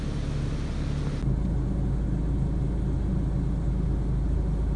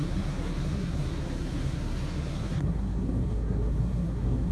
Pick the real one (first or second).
first